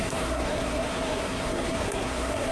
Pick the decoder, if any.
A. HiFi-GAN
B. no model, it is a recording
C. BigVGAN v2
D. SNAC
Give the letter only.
D